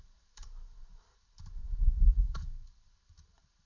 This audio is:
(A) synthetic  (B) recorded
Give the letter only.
A